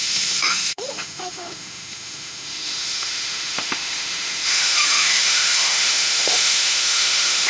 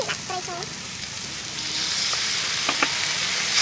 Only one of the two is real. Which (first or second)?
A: second